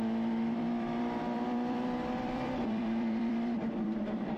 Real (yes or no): no